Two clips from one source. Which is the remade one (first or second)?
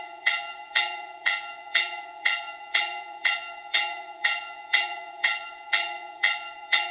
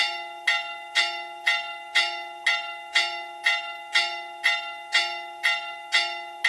first